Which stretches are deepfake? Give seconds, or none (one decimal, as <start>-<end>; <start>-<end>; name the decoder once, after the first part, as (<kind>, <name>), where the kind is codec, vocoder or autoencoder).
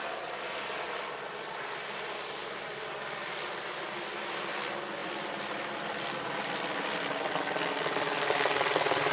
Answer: 2.4-4.5 (vocoder, BigVGAN v2); 5.0-8.3